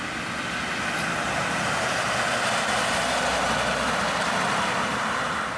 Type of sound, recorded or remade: recorded